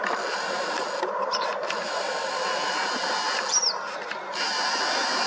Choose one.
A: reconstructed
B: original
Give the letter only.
B